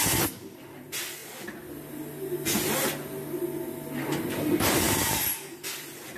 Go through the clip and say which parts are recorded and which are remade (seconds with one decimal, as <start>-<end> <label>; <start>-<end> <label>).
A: 0.0-1.2 remade; 1.2-4.9 recorded; 4.9-6.2 remade

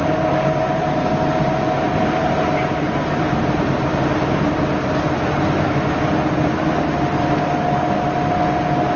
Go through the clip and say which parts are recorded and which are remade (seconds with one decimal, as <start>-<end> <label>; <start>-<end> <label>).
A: 0.0-4.4 remade; 4.4-9.0 recorded

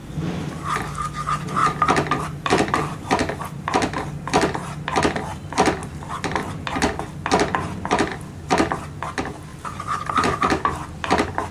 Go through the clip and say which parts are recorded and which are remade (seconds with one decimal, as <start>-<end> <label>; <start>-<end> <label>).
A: 0.0-1.6 recorded; 1.6-4.1 remade; 4.1-9.5 recorded; 9.5-10.6 remade; 10.6-11.5 recorded

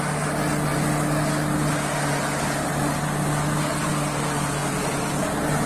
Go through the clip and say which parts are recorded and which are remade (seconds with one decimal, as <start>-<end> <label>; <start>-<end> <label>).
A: 0.0-4.6 recorded; 4.6-5.2 remade; 5.2-5.7 recorded